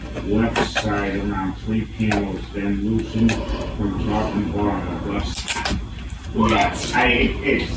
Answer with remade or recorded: recorded